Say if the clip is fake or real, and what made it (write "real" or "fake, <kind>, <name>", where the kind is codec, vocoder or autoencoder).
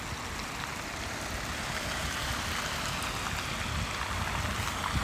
real